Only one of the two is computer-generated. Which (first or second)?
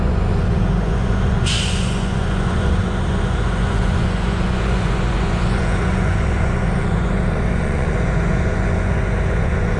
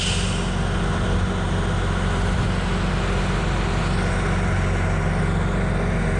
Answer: first